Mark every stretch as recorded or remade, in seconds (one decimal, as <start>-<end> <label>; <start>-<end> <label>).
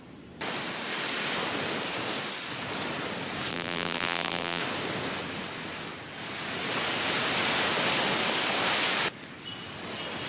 0.0-3.5 recorded; 3.5-4.6 remade; 4.6-10.3 recorded